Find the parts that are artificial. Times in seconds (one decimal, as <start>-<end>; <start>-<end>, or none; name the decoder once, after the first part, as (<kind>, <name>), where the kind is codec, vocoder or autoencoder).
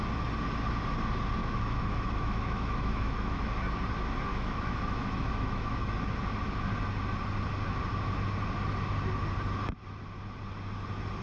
1.4-3.4 (autoencoder, DAC-VAE); 4.3-5.9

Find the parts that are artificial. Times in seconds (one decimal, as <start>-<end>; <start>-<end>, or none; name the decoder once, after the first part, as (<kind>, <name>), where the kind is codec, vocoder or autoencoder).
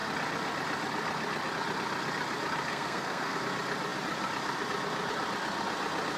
2.7-3.4 (codec, SNAC)